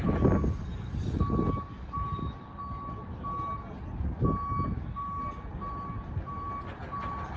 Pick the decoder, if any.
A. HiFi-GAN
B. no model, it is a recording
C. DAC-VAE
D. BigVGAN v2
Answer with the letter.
B